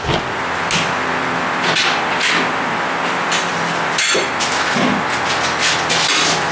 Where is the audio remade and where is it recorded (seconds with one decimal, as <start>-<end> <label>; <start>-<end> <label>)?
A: 0.0-6.5 recorded